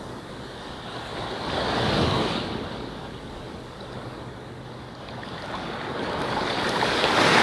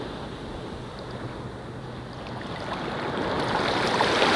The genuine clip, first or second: second